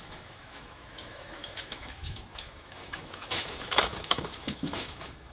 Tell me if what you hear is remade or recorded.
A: remade